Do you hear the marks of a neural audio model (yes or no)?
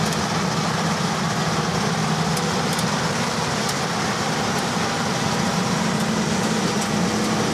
no